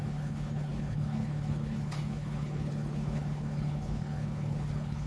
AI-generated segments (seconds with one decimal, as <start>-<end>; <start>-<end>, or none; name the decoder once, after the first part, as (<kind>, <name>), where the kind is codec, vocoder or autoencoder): 0.0-5.1 (codec, HILCodec)